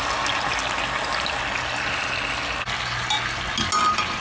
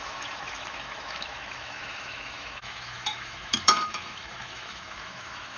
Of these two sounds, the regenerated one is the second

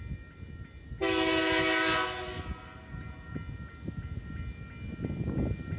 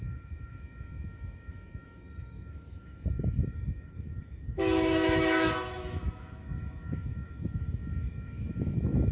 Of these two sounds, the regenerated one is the second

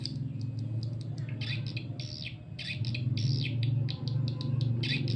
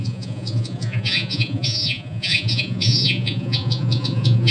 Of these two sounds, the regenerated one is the second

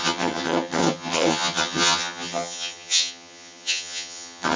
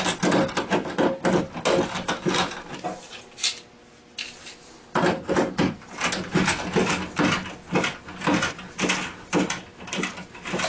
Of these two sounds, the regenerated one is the first